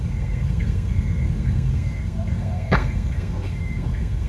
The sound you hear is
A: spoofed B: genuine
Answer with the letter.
A